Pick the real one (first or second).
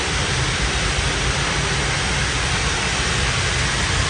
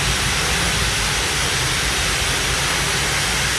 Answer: second